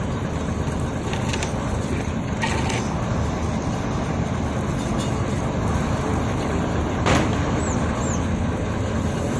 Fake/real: real